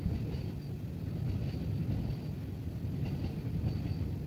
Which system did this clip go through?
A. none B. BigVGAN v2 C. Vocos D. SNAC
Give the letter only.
A